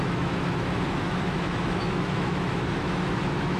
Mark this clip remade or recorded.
remade